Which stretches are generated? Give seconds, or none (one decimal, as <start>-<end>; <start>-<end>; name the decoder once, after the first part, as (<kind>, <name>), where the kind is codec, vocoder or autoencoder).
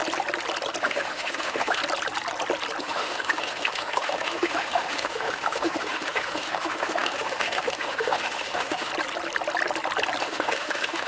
0.8-1.8 (autoencoder, DAC-VAE); 2.8-8.9; 10.2-11.1